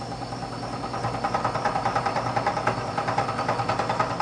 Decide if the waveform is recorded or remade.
recorded